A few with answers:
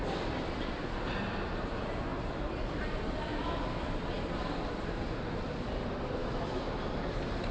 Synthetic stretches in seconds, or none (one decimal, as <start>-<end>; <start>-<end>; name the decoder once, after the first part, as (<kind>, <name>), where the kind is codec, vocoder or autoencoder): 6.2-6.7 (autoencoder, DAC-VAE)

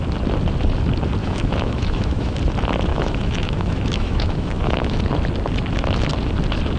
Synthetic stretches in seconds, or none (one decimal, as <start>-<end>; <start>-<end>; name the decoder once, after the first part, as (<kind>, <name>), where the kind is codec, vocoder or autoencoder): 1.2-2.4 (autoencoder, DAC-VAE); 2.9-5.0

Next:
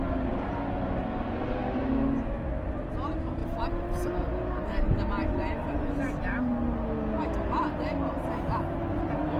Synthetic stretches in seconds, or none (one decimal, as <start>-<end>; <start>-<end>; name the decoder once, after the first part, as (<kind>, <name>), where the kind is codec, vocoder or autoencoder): none

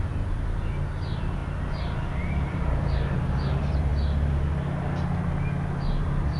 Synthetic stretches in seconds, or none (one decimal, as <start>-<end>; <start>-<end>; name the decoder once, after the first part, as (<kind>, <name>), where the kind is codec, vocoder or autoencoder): 0.0-1.4 (vocoder, BigVGAN v2); 2.5-3.9; 6.0-6.4

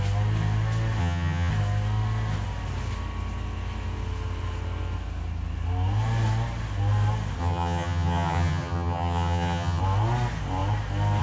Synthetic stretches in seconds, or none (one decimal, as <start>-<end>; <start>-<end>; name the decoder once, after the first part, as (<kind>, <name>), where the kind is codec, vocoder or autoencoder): 1.0-1.5 (vocoder, HiFi-GAN); 7.4-9.8

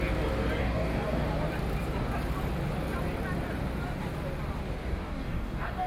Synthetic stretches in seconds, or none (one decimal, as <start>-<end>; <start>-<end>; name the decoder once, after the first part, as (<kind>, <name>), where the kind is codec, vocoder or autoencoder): 0.6-1.3 (codec, DAC); 4.8-5.9

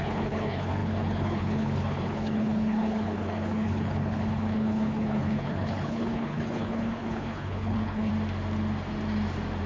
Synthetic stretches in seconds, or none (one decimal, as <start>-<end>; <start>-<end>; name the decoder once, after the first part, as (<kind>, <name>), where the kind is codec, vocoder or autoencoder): 0.0-8.1 (codec, HILCodec)